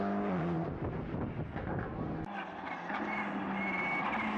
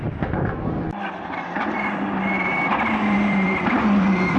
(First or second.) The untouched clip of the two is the first